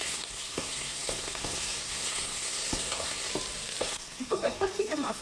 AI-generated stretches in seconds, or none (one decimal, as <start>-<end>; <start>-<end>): 0.0-3.3; 3.8-5.2